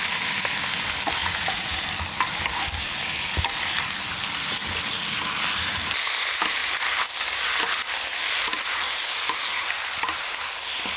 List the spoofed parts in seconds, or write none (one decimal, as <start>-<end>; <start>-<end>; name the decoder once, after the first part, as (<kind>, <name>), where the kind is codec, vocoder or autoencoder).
1.2-1.8 (vocoder, Vocos)